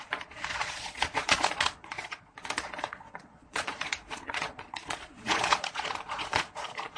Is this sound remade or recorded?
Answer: remade